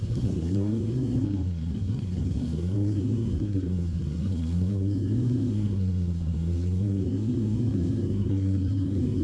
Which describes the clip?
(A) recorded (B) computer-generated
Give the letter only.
B